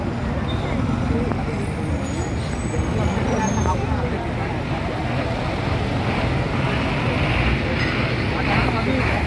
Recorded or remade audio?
recorded